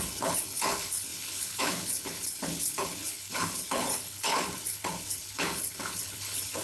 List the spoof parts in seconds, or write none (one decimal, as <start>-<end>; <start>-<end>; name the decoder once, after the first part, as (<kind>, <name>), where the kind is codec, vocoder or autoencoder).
0.0-6.6 (codec, HILCodec)